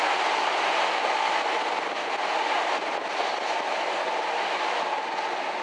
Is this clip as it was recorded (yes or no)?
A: yes